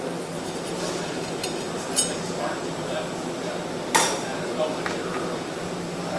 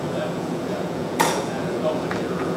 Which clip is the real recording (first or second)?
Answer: first